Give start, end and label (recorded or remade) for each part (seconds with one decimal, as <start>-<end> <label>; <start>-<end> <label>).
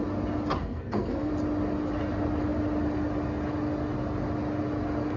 0.0-0.6 recorded; 0.6-1.3 remade; 1.3-5.2 recorded